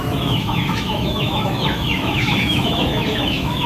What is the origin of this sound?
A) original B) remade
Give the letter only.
B